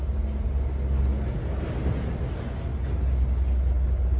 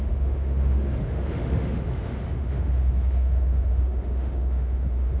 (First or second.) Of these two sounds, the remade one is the second